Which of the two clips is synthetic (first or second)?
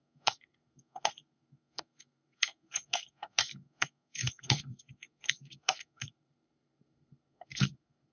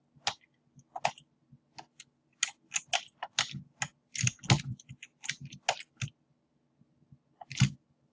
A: first